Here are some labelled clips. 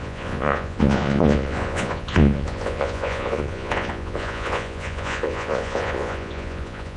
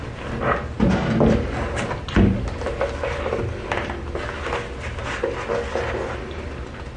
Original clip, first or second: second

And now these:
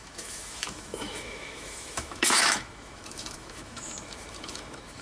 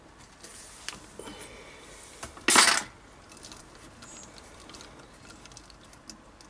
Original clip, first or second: second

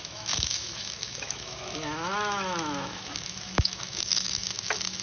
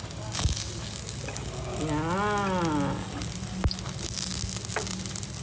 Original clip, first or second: second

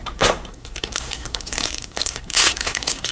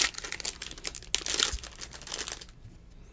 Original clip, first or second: second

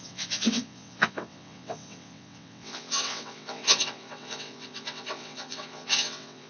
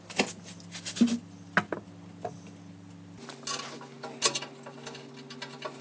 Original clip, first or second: second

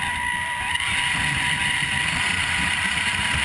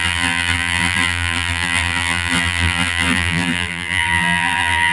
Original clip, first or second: first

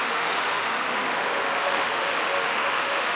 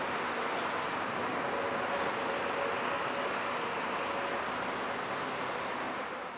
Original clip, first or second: second